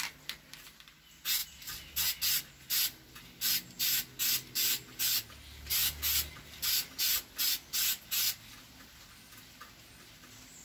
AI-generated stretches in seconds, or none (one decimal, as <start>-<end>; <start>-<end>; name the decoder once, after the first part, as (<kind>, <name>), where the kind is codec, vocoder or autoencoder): none